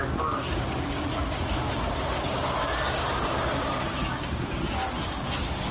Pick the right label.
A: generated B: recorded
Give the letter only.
A